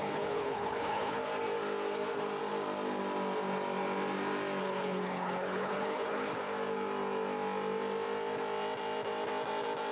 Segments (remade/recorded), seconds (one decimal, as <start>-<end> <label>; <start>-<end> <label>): 0.0-1.2 remade; 1.2-4.6 recorded; 4.6-6.3 remade; 6.3-9.9 recorded

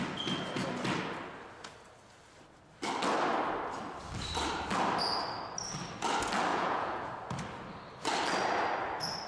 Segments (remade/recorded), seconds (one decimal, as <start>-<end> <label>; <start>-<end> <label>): 0.0-6.5 recorded; 6.5-7.1 remade; 7.1-9.3 recorded

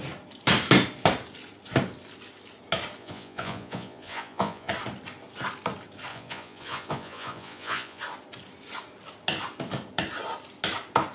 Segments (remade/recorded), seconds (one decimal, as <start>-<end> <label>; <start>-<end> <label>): 0.0-3.0 recorded; 3.0-4.7 remade; 4.7-6.1 recorded; 6.1-8.0 remade; 8.0-11.1 recorded

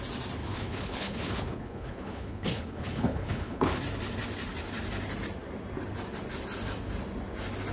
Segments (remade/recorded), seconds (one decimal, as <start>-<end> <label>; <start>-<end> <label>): 0.0-0.4 recorded; 0.4-3.8 remade; 3.8-7.7 recorded